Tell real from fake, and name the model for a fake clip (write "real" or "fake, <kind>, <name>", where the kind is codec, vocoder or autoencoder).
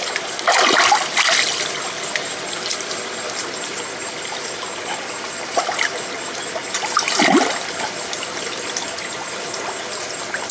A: real